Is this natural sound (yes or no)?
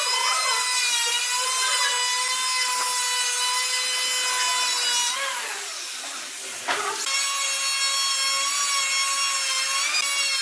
yes